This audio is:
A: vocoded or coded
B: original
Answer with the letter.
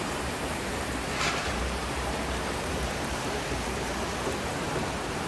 A